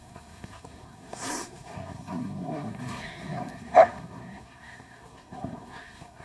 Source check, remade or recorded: remade